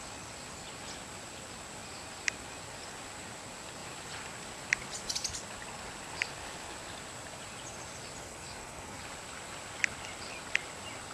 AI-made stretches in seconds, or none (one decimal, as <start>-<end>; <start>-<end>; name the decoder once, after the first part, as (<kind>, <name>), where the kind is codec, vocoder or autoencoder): 8.2-9.0 (codec, SNAC)